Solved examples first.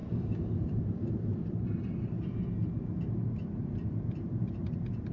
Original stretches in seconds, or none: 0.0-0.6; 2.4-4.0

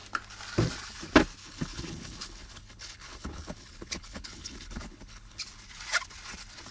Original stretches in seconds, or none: 0.0-1.4; 5.4-6.7

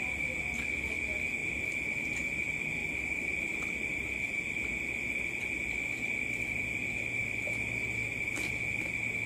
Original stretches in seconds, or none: 0.0-1.4; 2.0-2.8; 4.1-9.3

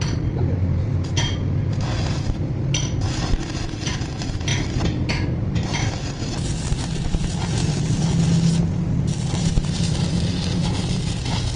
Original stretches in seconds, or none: 0.0-11.6

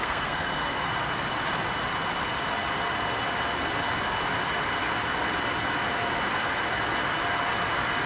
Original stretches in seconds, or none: 0.9-8.1

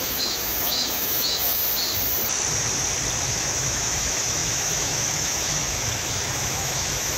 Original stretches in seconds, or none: 1.6-3.3

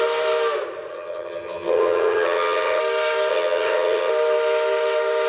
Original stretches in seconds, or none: 0.0-0.9; 2.8-3.3; 4.1-5.3